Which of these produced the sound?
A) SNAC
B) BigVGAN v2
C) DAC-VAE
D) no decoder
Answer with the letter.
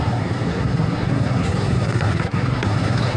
A